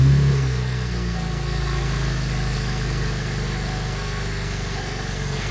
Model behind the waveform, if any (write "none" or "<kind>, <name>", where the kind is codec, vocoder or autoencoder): codec, SNAC